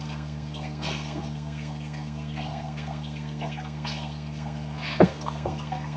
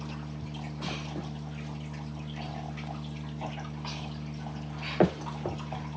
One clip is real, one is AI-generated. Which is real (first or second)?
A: second